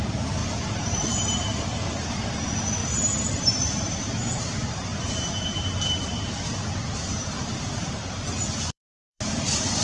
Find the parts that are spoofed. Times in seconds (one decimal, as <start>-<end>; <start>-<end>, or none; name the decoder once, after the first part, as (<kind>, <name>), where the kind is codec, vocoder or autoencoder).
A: 0.0-9.8 (vocoder, BigVGAN v2)